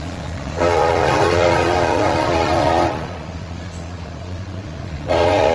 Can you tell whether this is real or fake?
fake